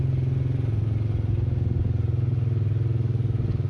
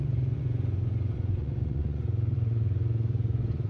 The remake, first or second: second